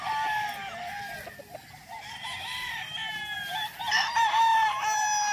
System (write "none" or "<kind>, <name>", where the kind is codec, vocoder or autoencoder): none